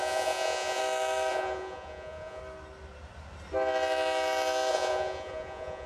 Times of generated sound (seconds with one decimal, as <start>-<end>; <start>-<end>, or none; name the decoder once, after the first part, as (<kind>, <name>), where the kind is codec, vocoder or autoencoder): 0.0-0.8 (vocoder, Vocos); 1.3-2.4; 4.7-5.9